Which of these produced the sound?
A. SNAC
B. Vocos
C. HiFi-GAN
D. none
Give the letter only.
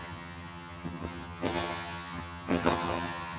C